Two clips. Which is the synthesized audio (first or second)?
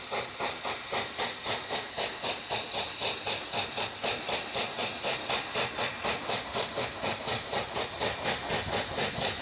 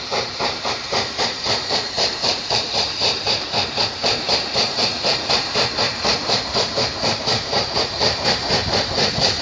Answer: second